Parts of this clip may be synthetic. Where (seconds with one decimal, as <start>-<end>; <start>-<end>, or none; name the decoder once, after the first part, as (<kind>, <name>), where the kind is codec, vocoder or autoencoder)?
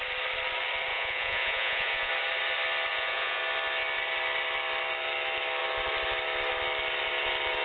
0.9-2.1 (vocoder, Vocos); 2.9-3.4